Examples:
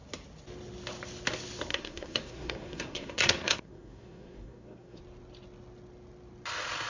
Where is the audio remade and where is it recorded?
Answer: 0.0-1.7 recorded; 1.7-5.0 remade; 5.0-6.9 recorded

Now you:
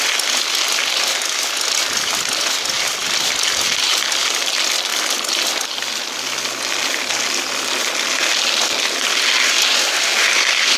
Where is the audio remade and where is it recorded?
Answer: 0.0-10.8 recorded

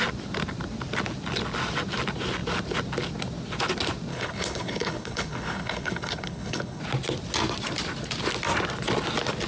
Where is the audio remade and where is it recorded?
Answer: 0.0-4.1 recorded; 4.1-6.8 remade; 6.8-9.5 recorded

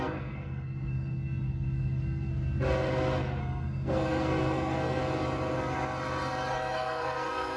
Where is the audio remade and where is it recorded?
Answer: 0.0-2.3 remade; 2.3-3.4 recorded; 3.4-5.0 remade; 5.0-6.5 recorded; 6.5-7.6 remade

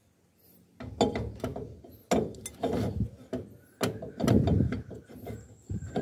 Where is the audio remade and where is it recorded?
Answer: 0.0-6.0 recorded

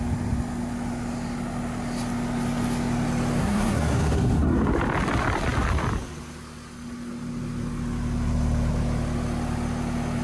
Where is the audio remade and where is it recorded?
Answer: 0.0-3.4 recorded; 3.4-4.7 remade; 4.7-10.2 recorded

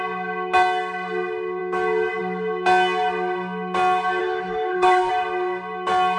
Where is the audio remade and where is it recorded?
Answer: 0.0-4.2 recorded; 4.2-5.1 remade; 5.1-6.2 recorded

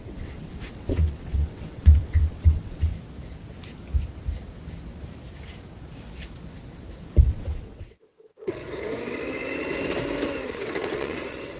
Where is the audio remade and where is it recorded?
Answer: 0.0-2.9 remade; 2.9-7.3 recorded; 7.3-8.6 remade; 8.6-10.5 recorded; 10.5-11.6 remade